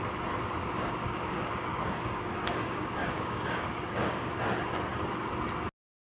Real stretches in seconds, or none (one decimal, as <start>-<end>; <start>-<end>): 0.0-0.6; 4.3-6.1